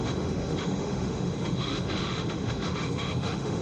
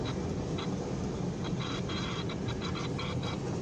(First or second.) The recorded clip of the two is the second